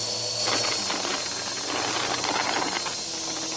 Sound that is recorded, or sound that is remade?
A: recorded